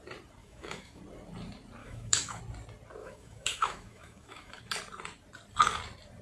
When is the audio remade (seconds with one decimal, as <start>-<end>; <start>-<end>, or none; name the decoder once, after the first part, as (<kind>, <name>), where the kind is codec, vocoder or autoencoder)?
0.4-1.0 (autoencoder, DAC-VAE); 1.8-2.4; 3.0-4.6

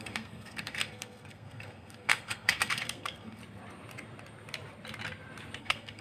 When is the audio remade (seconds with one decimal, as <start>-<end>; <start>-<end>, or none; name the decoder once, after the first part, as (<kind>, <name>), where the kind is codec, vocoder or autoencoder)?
0.0-3.4 (codec, SNAC); 5.6-6.0